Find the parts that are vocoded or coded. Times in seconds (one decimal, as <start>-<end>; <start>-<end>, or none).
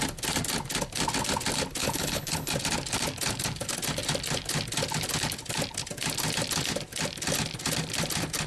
1.8-2.5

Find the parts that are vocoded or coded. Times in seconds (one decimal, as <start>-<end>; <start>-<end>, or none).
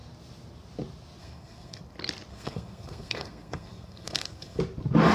1.2-1.8; 2.3-4.6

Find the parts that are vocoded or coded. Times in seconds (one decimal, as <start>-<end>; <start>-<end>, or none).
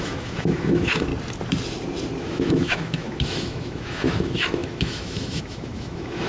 0.0-1.1; 2.2-6.3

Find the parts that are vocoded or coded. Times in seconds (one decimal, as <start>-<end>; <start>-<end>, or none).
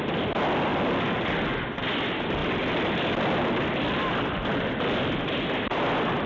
none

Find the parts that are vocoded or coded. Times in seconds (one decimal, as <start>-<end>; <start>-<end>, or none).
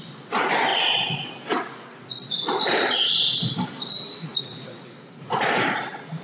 none